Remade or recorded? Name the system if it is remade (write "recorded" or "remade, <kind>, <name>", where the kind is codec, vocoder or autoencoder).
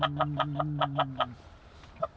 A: recorded